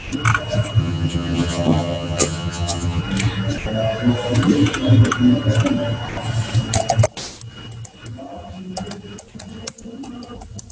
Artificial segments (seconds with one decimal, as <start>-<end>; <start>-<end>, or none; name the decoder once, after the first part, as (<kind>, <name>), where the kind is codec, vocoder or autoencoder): 0.8-3.0 (vocoder, HiFi-GAN)